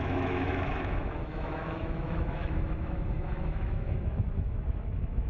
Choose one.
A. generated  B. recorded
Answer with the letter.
A